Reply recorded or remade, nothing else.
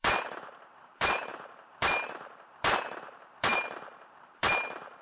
remade